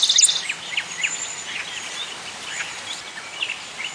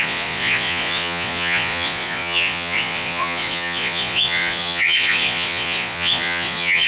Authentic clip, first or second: first